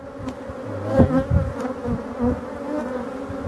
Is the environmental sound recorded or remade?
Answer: recorded